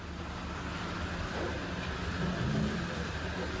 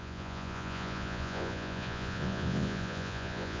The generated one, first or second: second